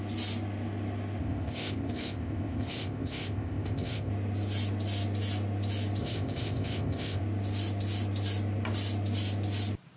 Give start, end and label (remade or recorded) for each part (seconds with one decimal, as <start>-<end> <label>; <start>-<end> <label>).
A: 0.0-1.2 recorded; 1.2-4.1 remade; 4.1-6.0 recorded; 6.0-7.2 remade; 7.2-10.0 recorded